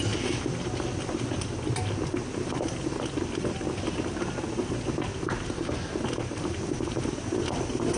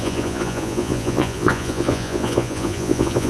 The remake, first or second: second